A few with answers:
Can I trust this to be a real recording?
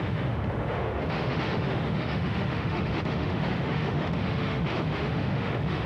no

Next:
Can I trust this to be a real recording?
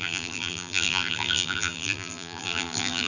no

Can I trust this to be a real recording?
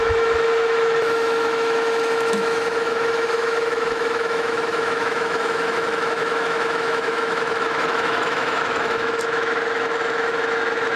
no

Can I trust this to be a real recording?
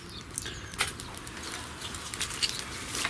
yes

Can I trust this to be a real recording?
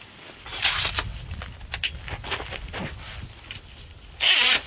yes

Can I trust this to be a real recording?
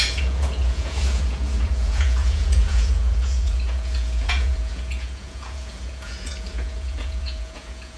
no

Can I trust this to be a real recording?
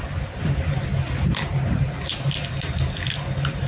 yes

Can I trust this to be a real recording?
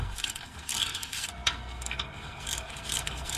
no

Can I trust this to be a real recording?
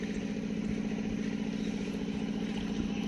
yes